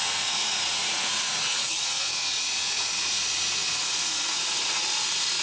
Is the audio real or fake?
fake